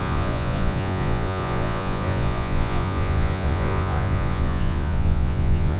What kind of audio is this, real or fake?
fake